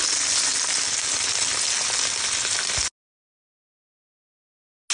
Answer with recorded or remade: recorded